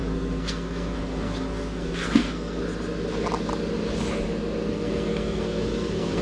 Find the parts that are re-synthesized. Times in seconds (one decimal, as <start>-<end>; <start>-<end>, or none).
0.0-2.6; 4.7-6.2